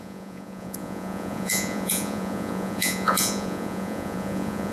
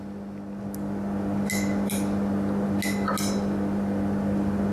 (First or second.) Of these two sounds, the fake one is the first